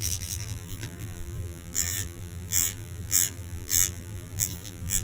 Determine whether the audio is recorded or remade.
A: remade